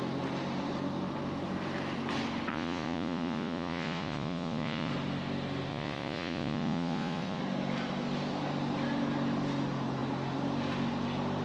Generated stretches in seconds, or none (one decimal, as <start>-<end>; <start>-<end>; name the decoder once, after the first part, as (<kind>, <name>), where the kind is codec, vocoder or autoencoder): 2.5-4.9 (vocoder, Vocos); 5.7-7.4